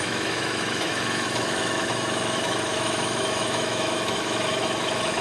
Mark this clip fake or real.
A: fake